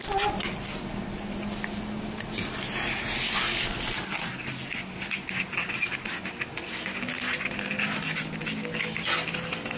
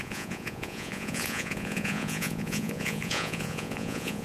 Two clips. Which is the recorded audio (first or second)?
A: first